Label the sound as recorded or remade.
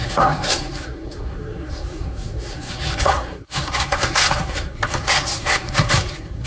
remade